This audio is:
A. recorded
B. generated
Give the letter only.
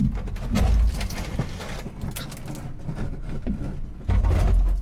A